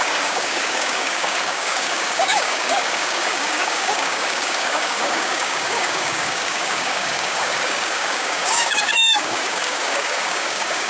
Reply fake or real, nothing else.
fake